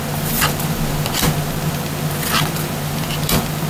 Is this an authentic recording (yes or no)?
yes